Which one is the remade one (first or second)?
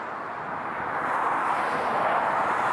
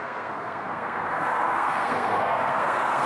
second